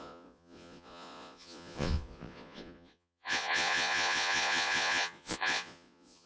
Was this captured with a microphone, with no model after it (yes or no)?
no